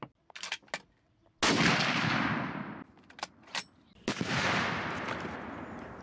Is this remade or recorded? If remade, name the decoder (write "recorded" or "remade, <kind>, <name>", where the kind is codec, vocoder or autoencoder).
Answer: recorded